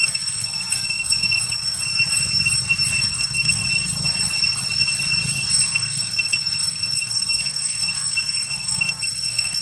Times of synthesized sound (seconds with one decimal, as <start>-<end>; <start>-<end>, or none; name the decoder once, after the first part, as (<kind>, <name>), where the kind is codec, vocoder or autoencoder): 0.0-1.8 (codec, SNAC); 3.0-3.6; 5.5-9.6